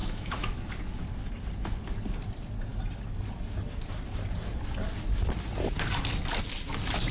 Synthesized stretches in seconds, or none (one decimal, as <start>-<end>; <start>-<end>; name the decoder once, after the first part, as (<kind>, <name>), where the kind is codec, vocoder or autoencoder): 0.0-0.7 (autoencoder, DAC-VAE)